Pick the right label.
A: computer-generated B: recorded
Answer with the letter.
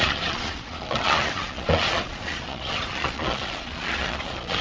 A